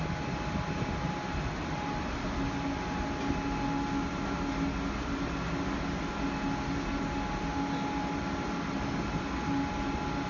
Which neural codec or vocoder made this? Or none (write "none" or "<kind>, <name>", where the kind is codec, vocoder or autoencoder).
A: none